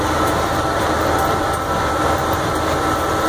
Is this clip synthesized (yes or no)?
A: yes